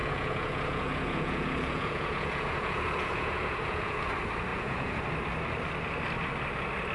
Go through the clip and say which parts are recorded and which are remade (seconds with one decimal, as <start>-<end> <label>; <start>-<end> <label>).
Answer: 0.0-4.1 remade; 4.1-4.5 recorded; 4.5-5.0 remade; 5.0-6.9 recorded